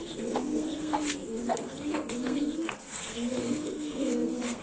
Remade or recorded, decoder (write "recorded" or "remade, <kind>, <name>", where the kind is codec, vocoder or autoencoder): remade, codec, SNAC